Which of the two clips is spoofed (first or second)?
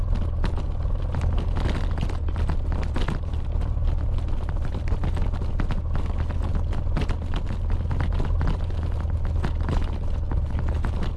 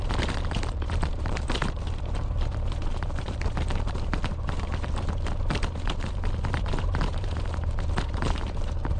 second